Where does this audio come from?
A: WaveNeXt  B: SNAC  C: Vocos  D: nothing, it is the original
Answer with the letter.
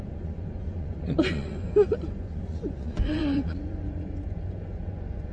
C